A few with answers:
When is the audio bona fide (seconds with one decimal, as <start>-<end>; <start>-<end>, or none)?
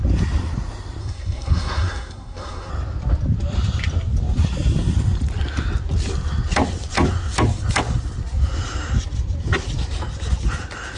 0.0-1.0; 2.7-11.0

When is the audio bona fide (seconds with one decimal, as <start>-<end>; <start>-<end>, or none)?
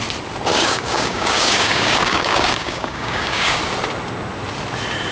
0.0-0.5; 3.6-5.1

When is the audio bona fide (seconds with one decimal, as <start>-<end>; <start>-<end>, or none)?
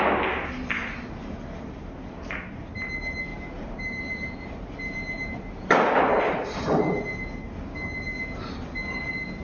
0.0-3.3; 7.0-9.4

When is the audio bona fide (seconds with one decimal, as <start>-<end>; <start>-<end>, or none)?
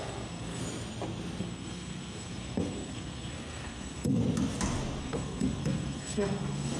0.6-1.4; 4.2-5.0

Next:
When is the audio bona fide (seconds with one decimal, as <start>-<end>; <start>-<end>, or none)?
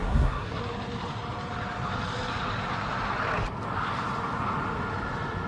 0.6-5.5